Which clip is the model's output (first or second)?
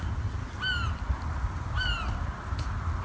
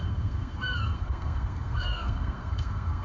second